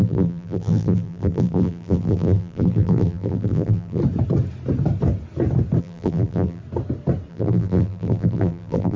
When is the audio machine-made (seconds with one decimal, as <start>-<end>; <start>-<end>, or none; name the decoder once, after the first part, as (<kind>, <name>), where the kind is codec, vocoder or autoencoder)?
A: 0.0-4.0 (vocoder, BigVGAN v2); 5.8-6.6; 7.3-9.0